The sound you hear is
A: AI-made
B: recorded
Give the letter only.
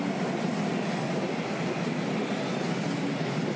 B